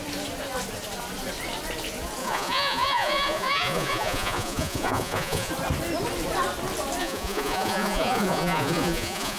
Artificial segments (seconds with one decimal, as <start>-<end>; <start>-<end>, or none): 2.2-5.5; 7.0-9.4